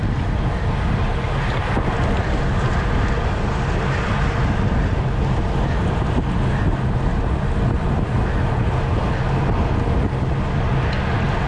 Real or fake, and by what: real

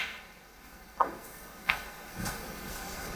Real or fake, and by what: fake, codec, SNAC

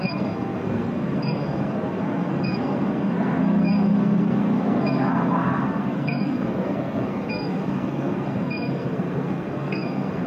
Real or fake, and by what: fake, codec, SNAC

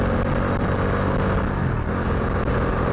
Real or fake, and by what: real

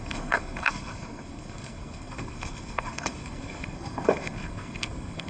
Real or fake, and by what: fake, codec, SNAC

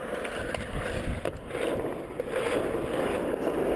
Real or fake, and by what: real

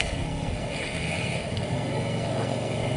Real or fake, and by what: fake, codec, SNAC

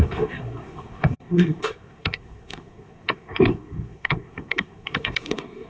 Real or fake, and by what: fake, codec, SNAC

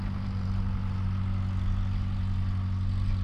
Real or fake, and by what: real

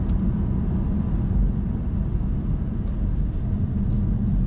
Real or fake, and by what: real